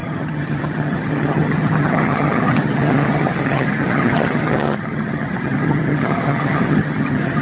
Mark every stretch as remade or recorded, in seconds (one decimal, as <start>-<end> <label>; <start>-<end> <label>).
0.0-7.4 remade